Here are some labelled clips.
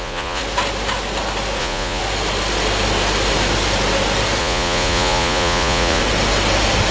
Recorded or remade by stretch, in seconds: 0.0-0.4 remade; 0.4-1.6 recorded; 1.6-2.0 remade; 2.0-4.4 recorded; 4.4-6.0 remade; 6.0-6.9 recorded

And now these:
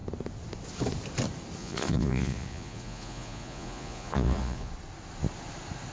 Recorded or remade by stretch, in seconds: 0.0-1.6 recorded; 1.6-4.7 remade; 4.7-5.9 recorded

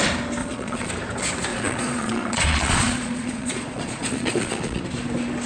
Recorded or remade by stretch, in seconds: 0.0-0.4 recorded; 0.4-0.9 remade; 0.9-1.5 recorded; 1.5-4.8 remade; 4.8-5.5 recorded